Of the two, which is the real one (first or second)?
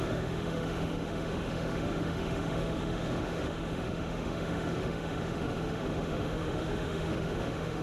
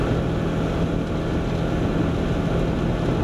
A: second